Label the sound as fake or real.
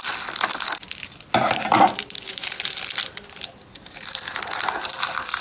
real